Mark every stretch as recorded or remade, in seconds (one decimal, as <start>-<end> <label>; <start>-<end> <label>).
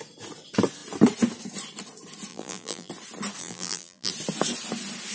0.0-2.3 recorded; 2.3-2.9 remade; 2.9-3.4 recorded; 3.4-4.1 remade; 4.1-5.1 recorded